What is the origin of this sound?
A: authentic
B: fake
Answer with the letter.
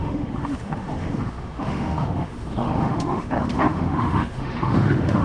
B